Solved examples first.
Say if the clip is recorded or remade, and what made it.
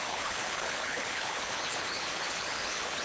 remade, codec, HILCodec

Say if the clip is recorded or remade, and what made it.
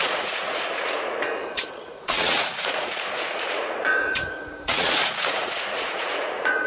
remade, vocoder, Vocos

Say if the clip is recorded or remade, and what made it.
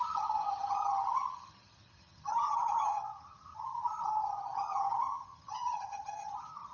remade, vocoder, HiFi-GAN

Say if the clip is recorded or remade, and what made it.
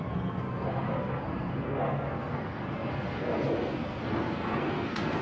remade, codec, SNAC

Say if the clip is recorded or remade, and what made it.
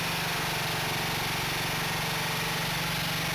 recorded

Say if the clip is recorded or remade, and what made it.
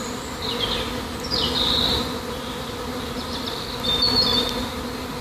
recorded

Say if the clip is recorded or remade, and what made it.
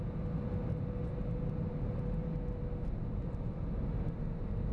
recorded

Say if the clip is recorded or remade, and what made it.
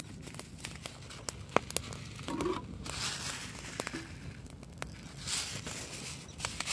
recorded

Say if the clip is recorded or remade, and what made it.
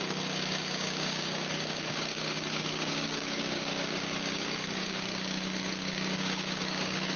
remade, codec, DAC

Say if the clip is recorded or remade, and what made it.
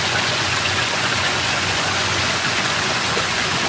remade, vocoder, Vocos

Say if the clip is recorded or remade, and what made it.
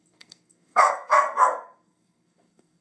remade, codec, SNAC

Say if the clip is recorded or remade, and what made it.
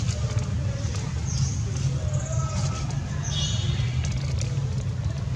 recorded